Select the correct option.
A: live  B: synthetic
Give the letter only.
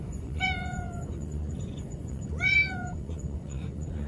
B